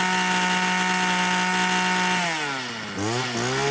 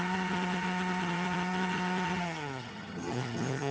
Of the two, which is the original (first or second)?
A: first